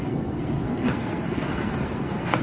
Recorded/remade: remade